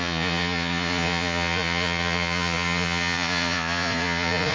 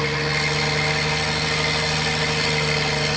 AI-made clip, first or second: first